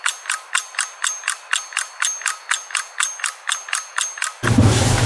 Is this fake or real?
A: real